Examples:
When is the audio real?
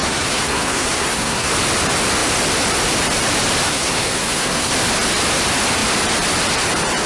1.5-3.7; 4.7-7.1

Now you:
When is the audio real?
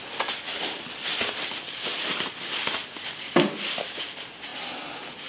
0.0-5.3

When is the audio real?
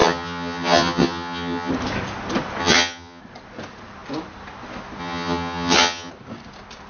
1.7-2.6; 3.2-5.0; 6.1-6.9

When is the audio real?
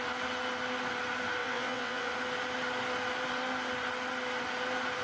0.0-1.4; 2.1-5.0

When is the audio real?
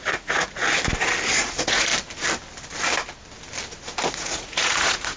0.6-1.3; 1.9-4.1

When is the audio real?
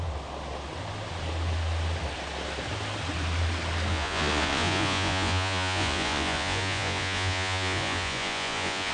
0.0-3.9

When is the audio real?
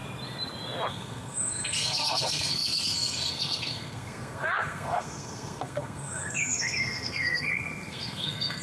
0.0-0.9